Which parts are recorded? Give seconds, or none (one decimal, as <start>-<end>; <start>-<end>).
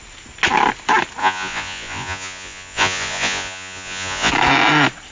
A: 0.0-1.2; 4.3-5.1